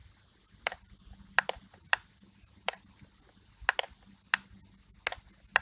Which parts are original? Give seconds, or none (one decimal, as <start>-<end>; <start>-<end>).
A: 0.0-5.6

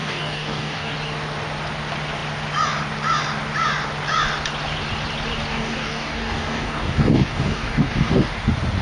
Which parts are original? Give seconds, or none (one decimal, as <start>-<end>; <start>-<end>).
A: 0.9-5.5; 8.3-8.8

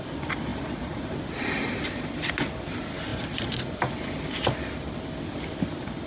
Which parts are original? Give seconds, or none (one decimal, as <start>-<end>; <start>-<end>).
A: 0.0-6.1